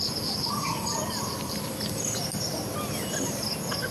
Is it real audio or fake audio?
real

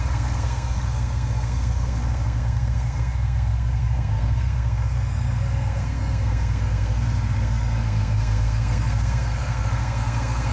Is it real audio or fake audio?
fake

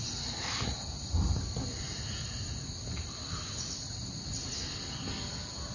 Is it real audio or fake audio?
real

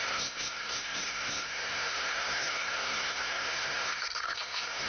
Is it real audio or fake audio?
fake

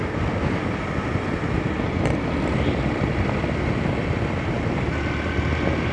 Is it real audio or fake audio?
real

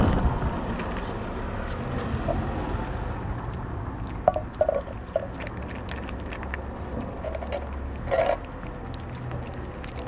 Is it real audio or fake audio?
real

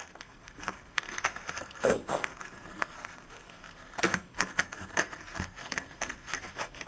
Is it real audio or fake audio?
fake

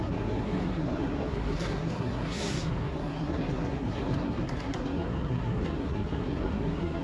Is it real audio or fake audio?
fake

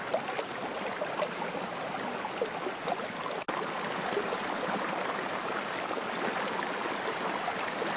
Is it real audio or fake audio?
real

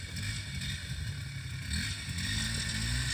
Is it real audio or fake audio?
real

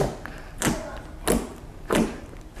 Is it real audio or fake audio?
real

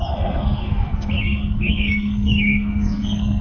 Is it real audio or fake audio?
fake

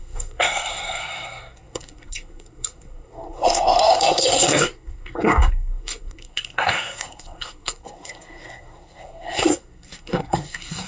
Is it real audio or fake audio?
fake